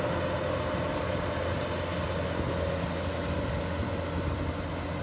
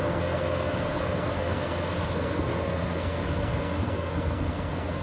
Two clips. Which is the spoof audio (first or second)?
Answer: second